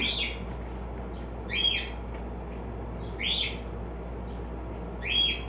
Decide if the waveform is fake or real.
real